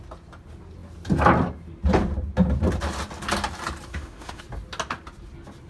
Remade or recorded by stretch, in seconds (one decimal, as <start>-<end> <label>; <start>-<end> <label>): 0.0-3.9 recorded; 3.9-4.4 remade; 4.4-5.7 recorded